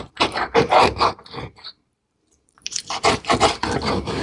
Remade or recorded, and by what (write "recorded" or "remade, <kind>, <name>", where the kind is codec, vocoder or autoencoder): remade, vocoder, BigVGAN v2